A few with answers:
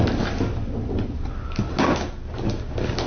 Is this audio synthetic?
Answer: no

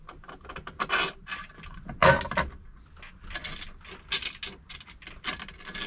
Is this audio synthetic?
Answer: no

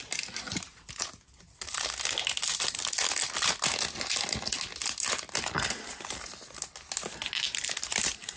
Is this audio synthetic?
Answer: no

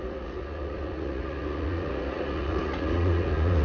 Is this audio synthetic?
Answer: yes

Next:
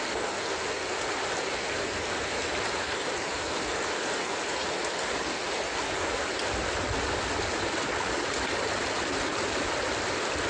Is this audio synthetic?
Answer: no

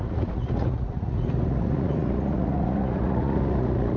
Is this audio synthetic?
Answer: yes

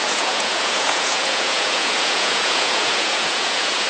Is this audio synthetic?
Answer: yes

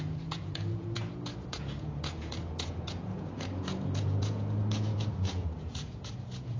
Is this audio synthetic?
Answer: yes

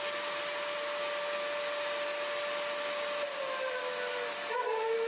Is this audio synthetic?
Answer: no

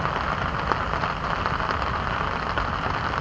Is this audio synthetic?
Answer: no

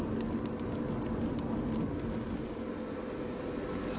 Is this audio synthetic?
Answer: no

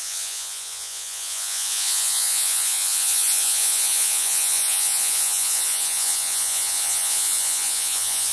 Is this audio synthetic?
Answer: yes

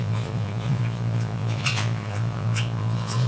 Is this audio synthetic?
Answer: yes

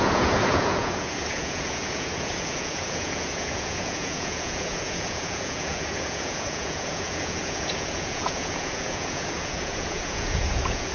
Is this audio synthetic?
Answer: yes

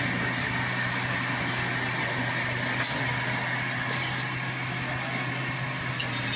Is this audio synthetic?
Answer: no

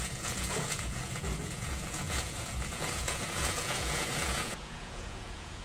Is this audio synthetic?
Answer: yes